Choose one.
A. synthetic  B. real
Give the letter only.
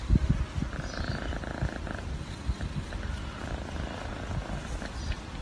B